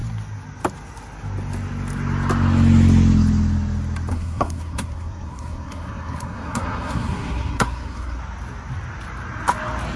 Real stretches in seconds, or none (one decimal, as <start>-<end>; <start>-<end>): 0.0-4.1; 8.2-10.0